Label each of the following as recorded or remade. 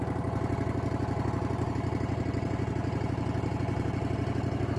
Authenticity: recorded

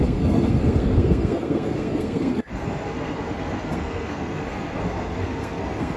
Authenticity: remade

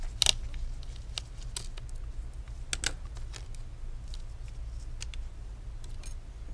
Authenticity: recorded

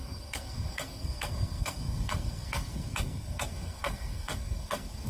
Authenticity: remade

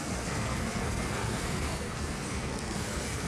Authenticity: remade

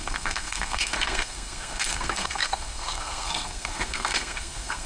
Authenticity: remade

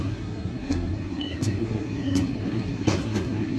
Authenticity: remade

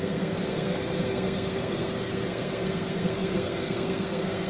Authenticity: remade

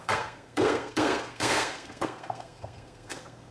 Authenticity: remade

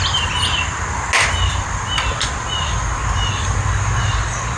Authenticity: recorded